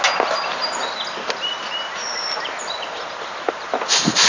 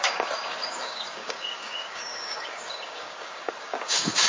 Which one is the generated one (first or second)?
second